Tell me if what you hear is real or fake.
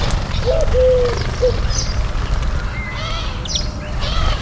real